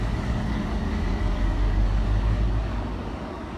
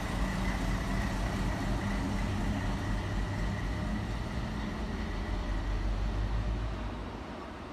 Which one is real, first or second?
second